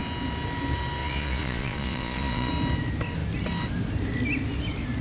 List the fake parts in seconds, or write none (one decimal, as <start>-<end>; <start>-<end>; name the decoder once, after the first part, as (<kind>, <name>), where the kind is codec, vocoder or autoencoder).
1.0-2.5 (vocoder, Vocos)